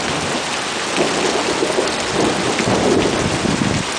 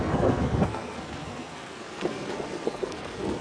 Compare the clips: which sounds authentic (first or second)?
first